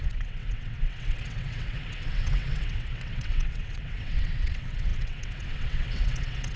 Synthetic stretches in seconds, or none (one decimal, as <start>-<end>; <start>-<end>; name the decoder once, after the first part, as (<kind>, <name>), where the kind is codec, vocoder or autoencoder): 0.0-6.6 (vocoder, WaveNeXt)